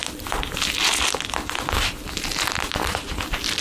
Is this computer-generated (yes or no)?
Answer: no